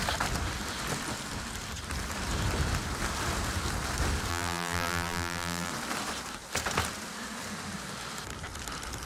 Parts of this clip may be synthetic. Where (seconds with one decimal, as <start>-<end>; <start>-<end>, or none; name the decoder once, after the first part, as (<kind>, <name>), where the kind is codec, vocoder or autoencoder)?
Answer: 4.3-5.7 (vocoder, BigVGAN v2)